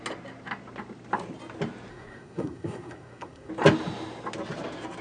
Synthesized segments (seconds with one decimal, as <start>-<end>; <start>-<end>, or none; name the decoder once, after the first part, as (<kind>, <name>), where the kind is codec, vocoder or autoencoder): 1.9-3.5 (codec, SNAC)